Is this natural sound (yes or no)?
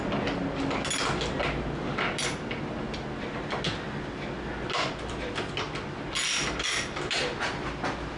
yes